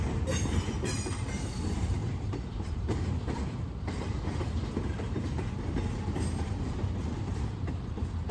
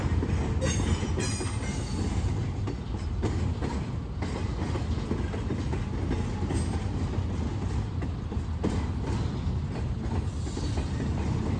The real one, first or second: second